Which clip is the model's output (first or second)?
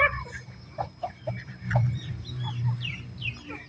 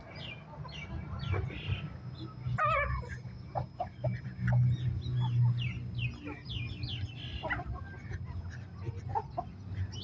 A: first